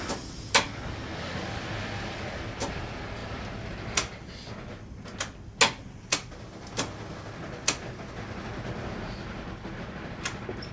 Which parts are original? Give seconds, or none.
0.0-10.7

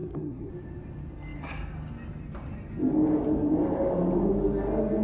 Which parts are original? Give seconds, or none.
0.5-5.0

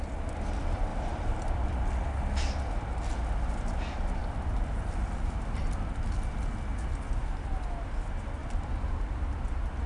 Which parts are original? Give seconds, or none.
0.0-0.9; 2.1-9.9

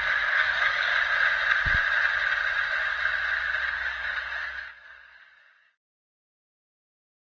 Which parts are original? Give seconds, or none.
0.9-3.7

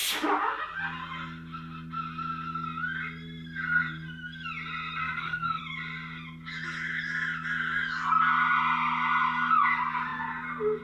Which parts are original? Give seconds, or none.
0.0-5.0; 5.6-10.8

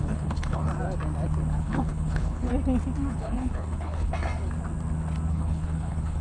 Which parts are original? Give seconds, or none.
0.7-1.6; 2.5-3.1; 4.1-5.3

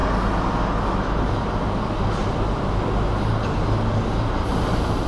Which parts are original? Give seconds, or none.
0.0-0.8; 2.2-4.5

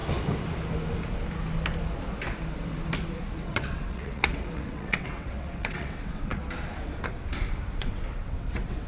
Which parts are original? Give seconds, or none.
0.0-3.4; 6.4-7.8